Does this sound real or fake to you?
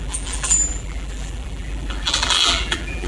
fake